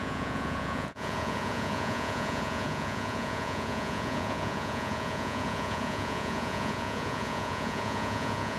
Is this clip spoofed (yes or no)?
yes